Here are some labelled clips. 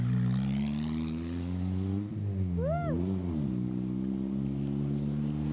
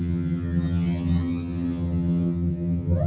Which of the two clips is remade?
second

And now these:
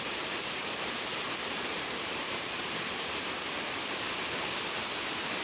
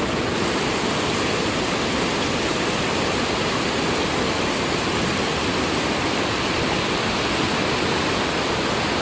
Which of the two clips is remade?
first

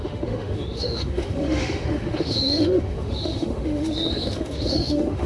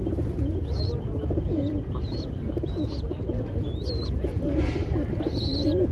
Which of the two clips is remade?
first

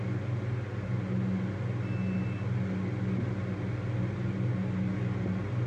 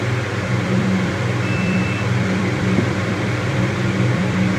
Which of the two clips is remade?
second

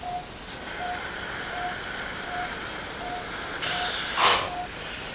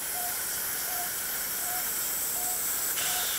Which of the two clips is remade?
second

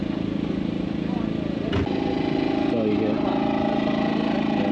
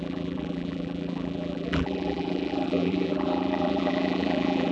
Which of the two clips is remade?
second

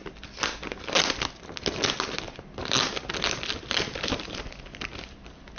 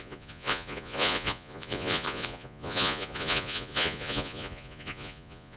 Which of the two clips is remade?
second